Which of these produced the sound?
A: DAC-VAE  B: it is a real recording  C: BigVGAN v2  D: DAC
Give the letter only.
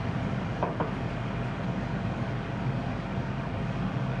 D